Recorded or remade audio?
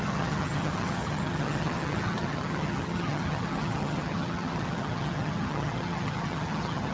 remade